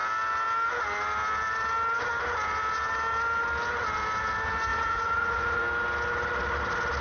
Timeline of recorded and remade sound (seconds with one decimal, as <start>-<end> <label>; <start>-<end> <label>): 0.0-4.7 recorded; 4.7-5.6 remade; 5.6-7.0 recorded